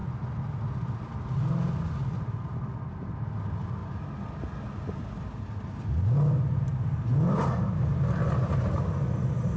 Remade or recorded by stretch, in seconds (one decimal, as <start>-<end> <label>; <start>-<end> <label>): 0.0-9.6 recorded